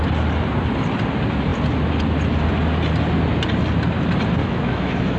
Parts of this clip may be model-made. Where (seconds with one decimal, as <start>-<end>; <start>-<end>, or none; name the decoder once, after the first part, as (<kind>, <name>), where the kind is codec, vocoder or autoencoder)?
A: 4.4-5.2 (autoencoder, DAC-VAE)

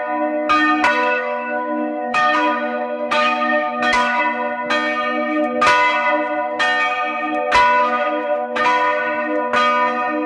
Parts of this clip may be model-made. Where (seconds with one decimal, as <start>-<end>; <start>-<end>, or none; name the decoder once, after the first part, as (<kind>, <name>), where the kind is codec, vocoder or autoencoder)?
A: 1.0-4.2 (autoencoder, DAC-VAE); 7.8-8.6

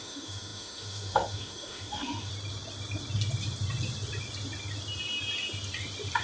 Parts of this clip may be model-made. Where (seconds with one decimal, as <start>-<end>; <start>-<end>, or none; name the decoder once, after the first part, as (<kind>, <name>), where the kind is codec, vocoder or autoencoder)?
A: 0.0-2.3 (autoencoder, DAC-VAE)

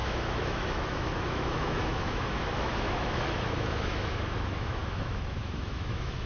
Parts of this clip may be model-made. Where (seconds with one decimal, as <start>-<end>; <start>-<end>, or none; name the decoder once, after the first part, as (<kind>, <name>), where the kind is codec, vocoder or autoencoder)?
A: 0.0-6.3 (autoencoder, DAC-VAE)

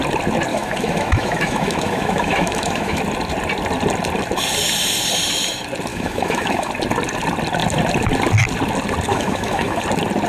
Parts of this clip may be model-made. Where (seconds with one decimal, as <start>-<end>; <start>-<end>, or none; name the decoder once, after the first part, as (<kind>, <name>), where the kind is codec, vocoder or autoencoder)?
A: 0.5-3.0 (autoencoder, DAC-VAE); 5.9-6.7; 9.1-9.8